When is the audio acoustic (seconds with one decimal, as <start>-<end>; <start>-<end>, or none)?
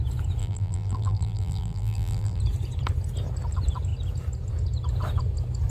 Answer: 0.0-0.4; 2.4-5.7